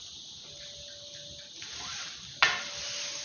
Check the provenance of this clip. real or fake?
real